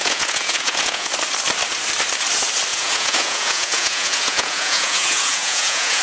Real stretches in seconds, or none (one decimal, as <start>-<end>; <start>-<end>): 1.1-2.7